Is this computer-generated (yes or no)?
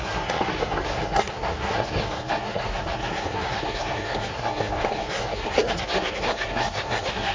yes